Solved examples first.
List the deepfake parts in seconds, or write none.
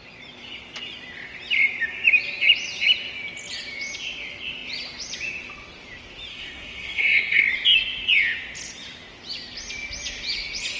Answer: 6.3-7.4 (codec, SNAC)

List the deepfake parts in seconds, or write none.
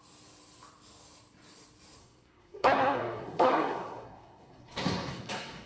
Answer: 2.0-5.7 (codec, SNAC)